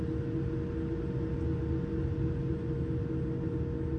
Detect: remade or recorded recorded